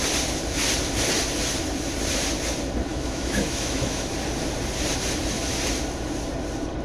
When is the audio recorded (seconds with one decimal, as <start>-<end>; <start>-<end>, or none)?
0.0-2.9; 4.1-6.8